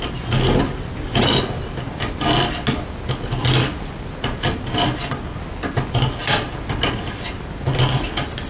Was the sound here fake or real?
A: real